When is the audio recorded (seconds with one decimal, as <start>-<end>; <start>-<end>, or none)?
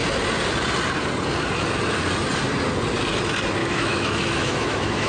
0.0-3.6